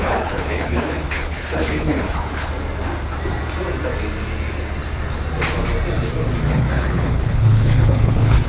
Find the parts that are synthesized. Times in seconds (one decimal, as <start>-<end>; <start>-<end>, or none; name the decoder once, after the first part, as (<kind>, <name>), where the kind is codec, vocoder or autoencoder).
0.0-2.5 (codec, HILCodec); 6.5-8.5